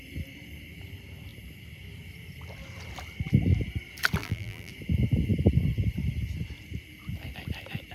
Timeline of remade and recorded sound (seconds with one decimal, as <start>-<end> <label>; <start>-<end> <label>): 0.0-4.2 recorded; 4.2-4.7 remade; 4.7-7.9 recorded